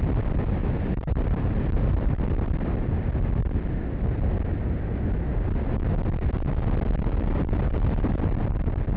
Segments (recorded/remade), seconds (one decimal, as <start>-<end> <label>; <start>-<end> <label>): 0.0-0.6 recorded; 0.6-2.2 remade; 2.2-9.0 recorded